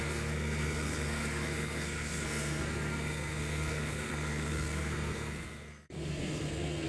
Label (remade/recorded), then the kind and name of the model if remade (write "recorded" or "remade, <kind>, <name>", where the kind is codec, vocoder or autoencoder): remade, codec, SNAC